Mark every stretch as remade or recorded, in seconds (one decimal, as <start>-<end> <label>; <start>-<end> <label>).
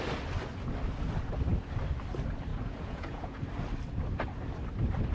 0.0-2.5 recorded; 2.5-3.4 remade; 3.4-5.1 recorded